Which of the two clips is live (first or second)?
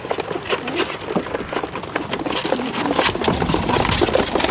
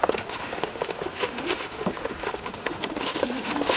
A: first